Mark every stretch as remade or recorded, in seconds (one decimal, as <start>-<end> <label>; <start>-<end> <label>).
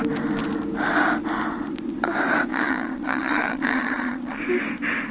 0.0-2.5 recorded; 2.5-4.4 remade; 4.4-5.1 recorded